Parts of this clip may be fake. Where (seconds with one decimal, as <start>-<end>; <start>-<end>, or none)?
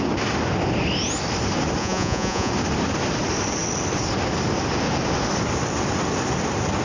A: 1.8-2.5